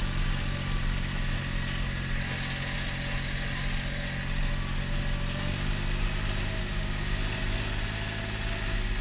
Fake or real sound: real